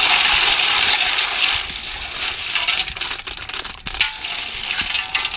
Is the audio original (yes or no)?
yes